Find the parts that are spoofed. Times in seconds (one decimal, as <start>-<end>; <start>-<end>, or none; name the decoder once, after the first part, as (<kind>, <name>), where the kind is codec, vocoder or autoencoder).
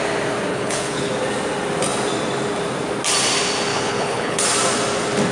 0.5-1.1 (codec, HILCodec); 3.7-4.4